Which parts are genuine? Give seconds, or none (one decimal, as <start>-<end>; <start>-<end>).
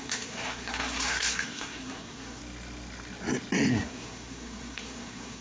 2.4-3.7